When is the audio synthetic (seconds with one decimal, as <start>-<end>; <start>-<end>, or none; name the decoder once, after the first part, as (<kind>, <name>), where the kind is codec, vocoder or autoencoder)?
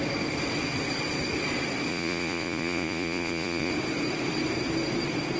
1.9-3.7 (vocoder, Vocos)